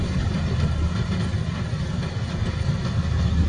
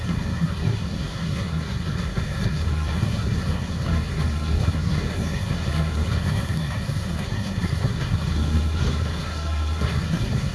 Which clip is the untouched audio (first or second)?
first